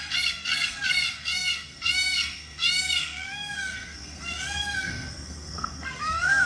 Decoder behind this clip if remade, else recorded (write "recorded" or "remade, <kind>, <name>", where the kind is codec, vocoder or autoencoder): remade, codec, SNAC